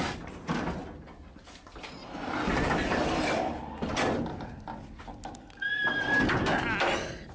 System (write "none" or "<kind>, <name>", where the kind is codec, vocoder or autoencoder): none